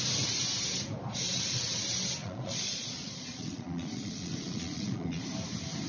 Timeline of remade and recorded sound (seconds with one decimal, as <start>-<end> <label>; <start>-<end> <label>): 0.0-2.2 recorded; 2.2-5.2 remade; 5.2-5.9 recorded